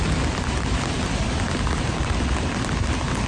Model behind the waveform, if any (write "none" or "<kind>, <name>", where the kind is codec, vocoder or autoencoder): none